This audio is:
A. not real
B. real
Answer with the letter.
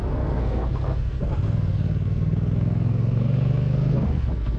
A